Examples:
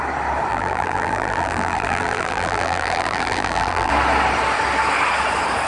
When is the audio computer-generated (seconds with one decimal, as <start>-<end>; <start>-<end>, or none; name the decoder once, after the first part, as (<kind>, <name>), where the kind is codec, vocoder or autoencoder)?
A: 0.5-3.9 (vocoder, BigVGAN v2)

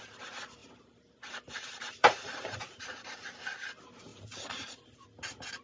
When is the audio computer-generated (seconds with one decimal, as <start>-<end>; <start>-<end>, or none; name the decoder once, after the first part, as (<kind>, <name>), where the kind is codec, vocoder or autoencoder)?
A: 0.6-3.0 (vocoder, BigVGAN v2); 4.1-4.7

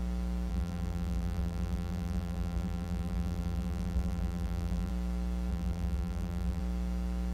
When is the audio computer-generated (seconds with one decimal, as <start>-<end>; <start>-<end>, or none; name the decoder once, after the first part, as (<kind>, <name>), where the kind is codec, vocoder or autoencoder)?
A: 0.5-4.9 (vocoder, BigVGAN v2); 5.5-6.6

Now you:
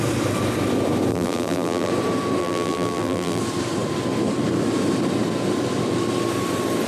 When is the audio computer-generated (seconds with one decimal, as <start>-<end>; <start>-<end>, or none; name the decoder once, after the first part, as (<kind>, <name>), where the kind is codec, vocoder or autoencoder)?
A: 1.1-1.9 (vocoder, BigVGAN v2); 2.4-3.4